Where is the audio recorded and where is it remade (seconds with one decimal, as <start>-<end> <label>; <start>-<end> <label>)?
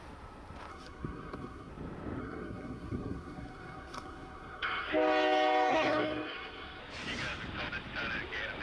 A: 0.0-0.7 recorded; 0.7-1.7 remade; 1.7-2.2 recorded; 2.2-4.9 remade; 4.9-5.7 recorded; 5.7-6.8 remade; 6.8-8.6 recorded